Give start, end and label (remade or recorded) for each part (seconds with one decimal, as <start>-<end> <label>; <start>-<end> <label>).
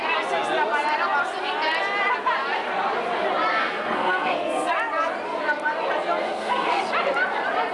0.0-3.5 recorded; 3.5-4.7 remade; 4.7-6.2 recorded; 6.2-6.8 remade; 6.8-7.7 recorded